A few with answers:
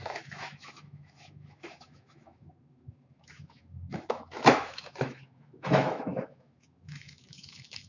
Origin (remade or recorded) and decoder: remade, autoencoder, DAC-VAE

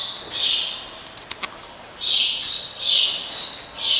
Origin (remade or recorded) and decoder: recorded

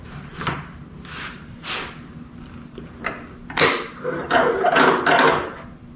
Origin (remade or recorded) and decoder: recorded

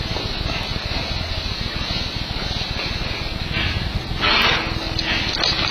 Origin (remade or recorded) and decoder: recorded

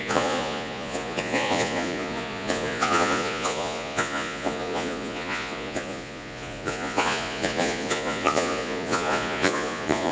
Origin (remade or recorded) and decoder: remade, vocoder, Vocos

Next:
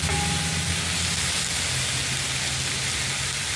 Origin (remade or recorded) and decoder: recorded